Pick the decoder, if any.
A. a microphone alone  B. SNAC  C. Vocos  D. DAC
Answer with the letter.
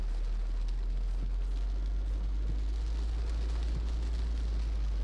A